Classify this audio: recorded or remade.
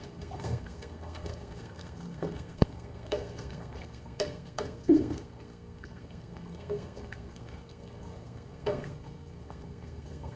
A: remade